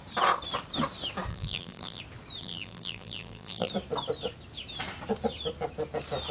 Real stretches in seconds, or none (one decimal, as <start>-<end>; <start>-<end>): 0.0-1.3; 2.0-2.4; 3.7-6.3

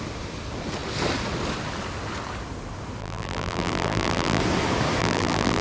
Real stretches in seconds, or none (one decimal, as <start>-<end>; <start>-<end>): 0.0-3.0; 4.4-5.0

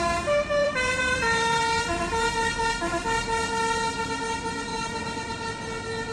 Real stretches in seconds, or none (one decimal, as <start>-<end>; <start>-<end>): 0.0-0.6; 1.6-4.7; 5.5-6.1

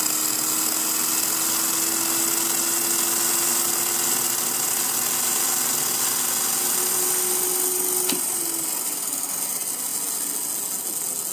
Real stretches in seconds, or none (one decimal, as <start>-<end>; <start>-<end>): 0.0-11.3

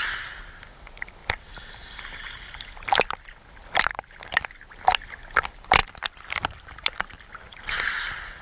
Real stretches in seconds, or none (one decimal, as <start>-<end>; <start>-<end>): 0.0-1.2; 4.5-5.8; 7.6-8.4

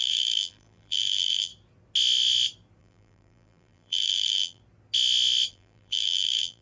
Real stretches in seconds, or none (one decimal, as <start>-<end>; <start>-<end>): 1.5-2.8; 4.6-5.5